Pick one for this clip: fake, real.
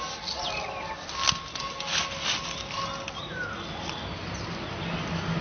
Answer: real